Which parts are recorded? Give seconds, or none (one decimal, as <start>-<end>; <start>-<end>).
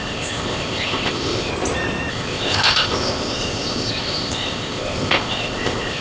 1.5-2.1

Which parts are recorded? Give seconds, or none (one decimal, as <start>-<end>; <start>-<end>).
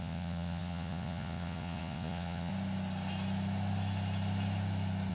2.5-5.1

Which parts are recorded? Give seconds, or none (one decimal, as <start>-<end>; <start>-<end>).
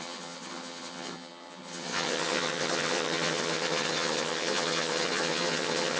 none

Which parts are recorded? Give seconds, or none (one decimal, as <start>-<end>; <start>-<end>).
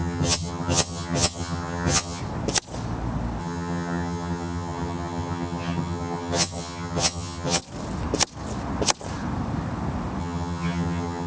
2.2-3.4; 7.6-10.2